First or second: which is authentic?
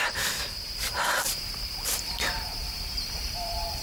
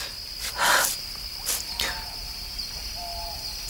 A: second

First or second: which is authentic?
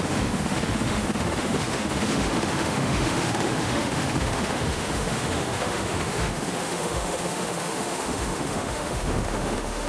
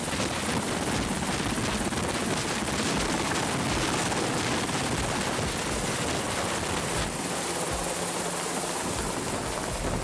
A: second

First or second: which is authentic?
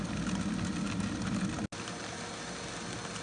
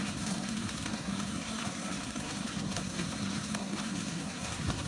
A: first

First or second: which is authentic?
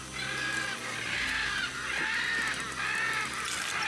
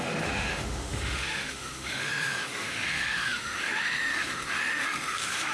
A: first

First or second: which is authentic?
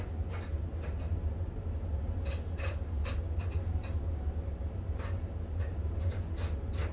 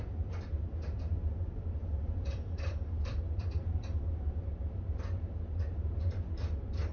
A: first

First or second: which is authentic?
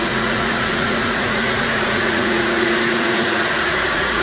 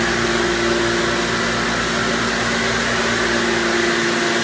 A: second